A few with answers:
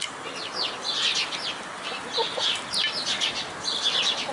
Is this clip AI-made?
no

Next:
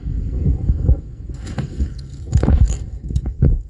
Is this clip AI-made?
yes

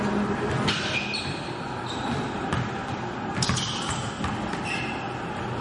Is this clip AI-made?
no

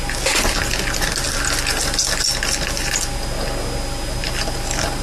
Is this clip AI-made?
no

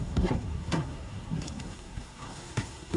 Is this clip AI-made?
yes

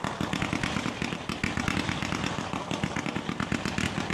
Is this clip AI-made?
no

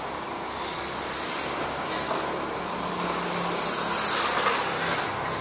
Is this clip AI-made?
no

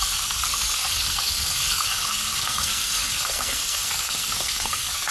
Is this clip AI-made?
yes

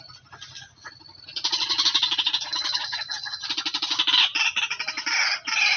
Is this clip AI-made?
no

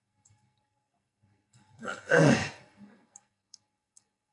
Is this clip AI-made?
yes